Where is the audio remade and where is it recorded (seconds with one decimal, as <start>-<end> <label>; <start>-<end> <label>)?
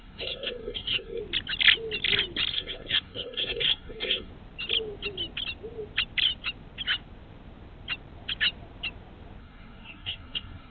0.0-1.2 remade; 1.2-2.5 recorded; 2.5-4.3 remade; 4.3-9.4 recorded; 9.4-10.7 remade